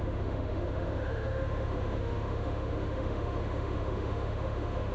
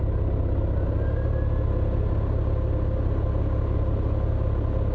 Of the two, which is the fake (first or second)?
first